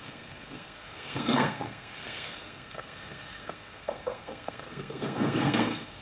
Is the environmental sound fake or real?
fake